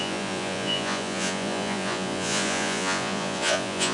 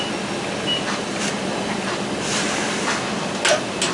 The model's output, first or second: first